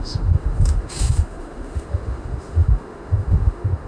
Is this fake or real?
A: fake